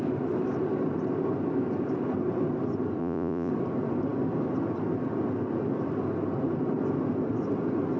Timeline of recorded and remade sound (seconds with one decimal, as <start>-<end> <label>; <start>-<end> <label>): 0.0-3.0 recorded; 3.0-3.5 remade; 3.5-8.0 recorded